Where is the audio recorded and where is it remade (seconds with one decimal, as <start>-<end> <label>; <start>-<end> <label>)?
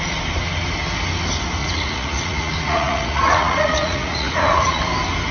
0.0-1.6 recorded; 1.6-4.8 remade; 4.8-5.3 recorded